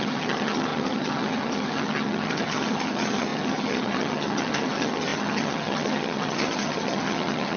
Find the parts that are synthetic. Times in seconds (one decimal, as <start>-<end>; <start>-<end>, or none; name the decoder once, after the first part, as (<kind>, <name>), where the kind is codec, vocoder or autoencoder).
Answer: 0.0-7.6 (vocoder, HiFi-GAN)